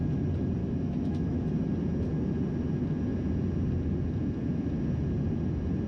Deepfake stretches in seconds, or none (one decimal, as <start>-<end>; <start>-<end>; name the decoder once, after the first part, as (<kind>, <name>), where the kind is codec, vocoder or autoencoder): 0.6-1.4 (autoencoder, DAC-VAE)